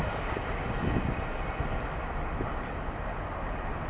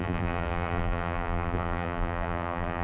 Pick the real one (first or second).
first